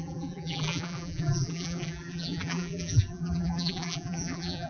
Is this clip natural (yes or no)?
no